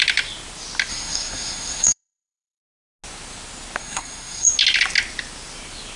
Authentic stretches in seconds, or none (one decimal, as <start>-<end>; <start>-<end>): 0.0-0.9; 2.6-3.8; 4.5-6.0